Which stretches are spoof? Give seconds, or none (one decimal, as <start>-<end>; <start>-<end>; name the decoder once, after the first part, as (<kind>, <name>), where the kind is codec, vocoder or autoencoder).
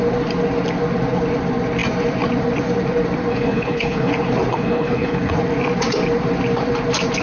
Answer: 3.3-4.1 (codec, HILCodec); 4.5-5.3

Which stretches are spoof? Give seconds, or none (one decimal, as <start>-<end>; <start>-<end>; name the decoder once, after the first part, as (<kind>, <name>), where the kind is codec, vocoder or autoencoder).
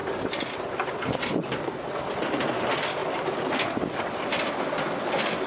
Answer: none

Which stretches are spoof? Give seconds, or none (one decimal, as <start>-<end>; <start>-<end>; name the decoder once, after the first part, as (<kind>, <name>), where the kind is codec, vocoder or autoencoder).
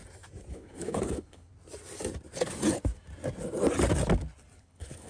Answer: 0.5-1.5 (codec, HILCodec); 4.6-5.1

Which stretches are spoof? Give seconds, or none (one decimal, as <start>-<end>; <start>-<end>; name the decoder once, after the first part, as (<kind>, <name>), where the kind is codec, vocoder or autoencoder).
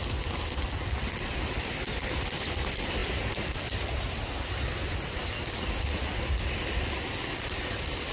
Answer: none